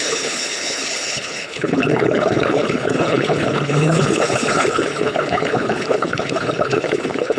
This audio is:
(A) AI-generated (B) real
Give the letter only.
A